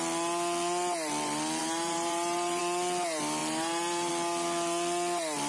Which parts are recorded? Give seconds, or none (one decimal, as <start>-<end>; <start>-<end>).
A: 0.0-1.6; 2.6-3.4; 4.1-5.5

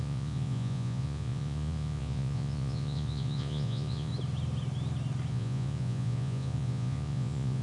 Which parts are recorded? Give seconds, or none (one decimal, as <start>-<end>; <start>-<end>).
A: 4.1-5.3

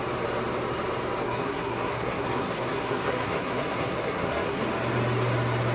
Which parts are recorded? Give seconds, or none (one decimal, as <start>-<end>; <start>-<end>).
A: 0.0-1.2; 4.6-5.7

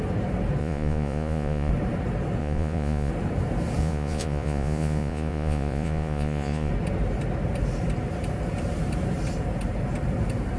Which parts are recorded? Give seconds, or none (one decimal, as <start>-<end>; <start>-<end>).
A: 0.0-0.6; 1.7-2.4; 3.1-3.8; 6.7-10.6

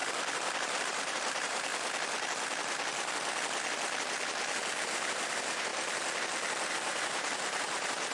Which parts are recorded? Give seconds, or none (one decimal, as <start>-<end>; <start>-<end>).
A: 0.0-0.8; 1.7-4.8; 5.7-6.7

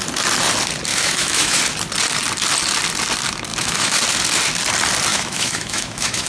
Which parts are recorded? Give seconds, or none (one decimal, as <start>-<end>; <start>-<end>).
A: 0.0-0.9; 1.6-3.5; 4.0-5.1